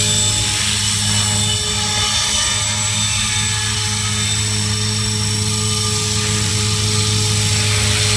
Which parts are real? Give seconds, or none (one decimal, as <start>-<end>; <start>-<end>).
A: 0.0-8.2